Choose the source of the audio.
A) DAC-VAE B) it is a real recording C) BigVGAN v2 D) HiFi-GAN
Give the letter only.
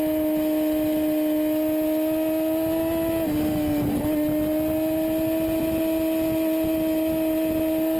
B